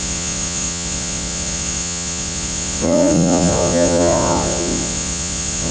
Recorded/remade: remade